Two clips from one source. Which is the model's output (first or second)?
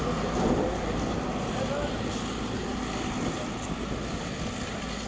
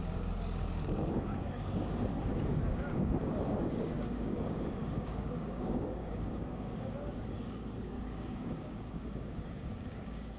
second